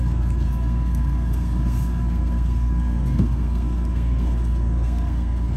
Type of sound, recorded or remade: remade